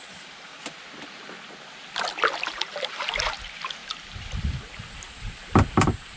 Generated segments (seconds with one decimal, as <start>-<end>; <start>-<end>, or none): 0.0-0.5; 2.4-3.8; 4.4-6.2